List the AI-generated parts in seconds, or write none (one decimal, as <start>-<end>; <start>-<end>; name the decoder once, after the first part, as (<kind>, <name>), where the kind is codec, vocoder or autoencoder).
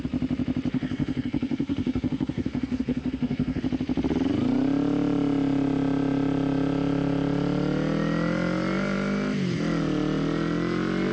0.7-3.6 (codec, SNAC)